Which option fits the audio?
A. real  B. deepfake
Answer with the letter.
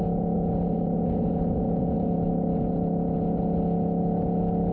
A